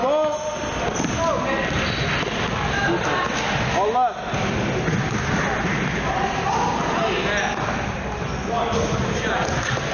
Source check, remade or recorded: recorded